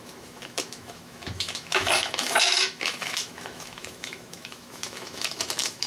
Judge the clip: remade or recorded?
remade